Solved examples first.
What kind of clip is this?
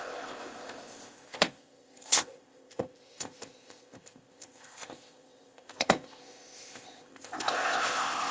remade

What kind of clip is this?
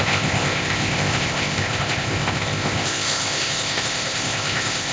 remade